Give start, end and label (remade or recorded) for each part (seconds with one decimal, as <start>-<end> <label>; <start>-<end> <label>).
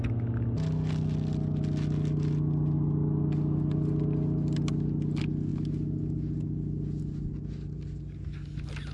0.0-8.9 recorded